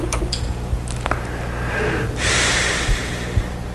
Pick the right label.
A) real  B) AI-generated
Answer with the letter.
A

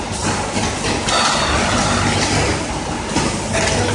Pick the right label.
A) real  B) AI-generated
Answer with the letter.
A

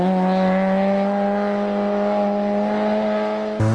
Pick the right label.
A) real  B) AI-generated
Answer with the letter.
A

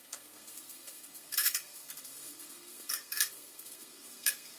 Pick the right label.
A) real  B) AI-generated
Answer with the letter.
B